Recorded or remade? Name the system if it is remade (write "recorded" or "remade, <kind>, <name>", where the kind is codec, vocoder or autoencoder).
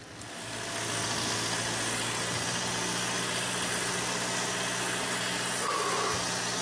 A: recorded